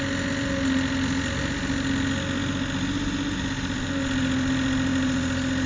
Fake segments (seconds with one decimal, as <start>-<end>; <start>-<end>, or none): none